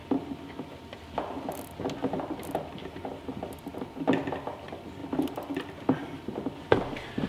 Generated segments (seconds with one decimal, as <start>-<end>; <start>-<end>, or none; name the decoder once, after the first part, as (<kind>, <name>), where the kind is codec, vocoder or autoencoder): 3.7-4.6 (vocoder, BigVGAN v2)